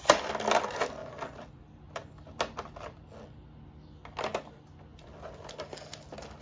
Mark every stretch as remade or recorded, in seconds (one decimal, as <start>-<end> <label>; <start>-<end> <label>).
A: 0.0-1.0 recorded; 1.0-3.0 remade; 3.0-4.9 recorded; 4.9-5.5 remade; 5.5-6.4 recorded